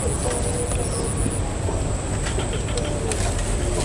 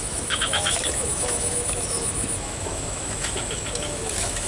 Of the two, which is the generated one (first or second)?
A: second